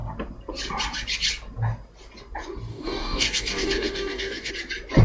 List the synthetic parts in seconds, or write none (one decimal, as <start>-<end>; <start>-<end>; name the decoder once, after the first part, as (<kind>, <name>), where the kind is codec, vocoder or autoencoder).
2.7-4.5 (codec, DAC)